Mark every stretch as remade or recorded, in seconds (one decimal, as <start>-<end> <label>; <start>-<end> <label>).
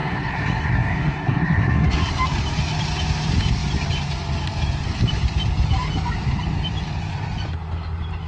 0.0-2.1 remade; 2.1-8.3 recorded